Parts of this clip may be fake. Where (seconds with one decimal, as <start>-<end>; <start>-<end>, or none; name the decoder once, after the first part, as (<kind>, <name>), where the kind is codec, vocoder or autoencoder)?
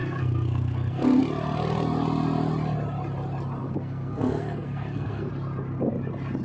0.0-1.2 (codec, SNAC); 3.6-5.3